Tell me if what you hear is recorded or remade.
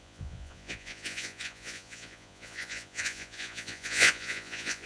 remade